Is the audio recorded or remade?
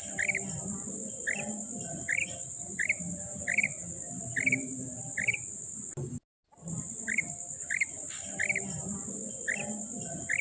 recorded